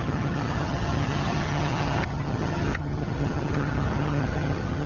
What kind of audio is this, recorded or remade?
remade